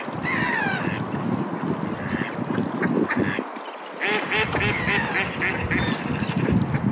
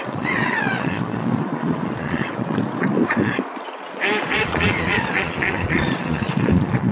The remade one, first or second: second